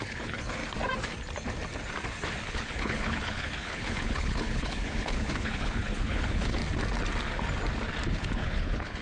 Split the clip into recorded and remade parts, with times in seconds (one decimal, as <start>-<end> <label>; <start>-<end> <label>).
0.0-0.6 remade; 0.6-2.5 recorded; 2.5-6.6 remade; 6.6-8.1 recorded; 8.1-9.0 remade